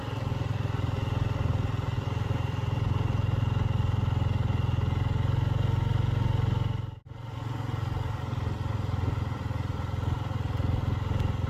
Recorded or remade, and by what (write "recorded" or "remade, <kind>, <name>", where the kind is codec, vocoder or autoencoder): recorded